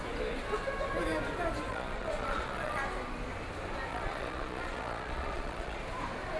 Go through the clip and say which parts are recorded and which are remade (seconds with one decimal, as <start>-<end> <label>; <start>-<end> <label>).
0.0-1.7 recorded; 1.7-2.8 remade; 2.8-3.9 recorded; 3.9-5.8 remade; 5.8-6.4 recorded